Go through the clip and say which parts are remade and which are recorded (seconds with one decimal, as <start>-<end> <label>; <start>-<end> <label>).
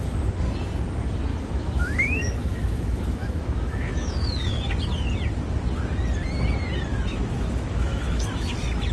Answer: 0.0-1.3 recorded; 1.3-4.6 remade; 4.6-6.9 recorded; 6.9-8.5 remade; 8.5-8.9 recorded